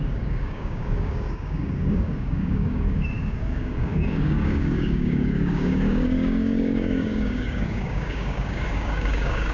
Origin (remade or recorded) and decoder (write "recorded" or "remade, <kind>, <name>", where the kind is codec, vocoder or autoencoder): remade, codec, DAC